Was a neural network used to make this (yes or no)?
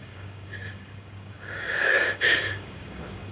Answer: yes